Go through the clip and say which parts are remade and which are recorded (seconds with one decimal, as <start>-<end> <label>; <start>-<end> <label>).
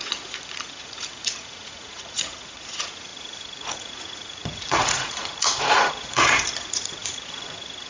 0.0-7.9 remade